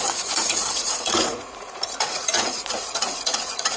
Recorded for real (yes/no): no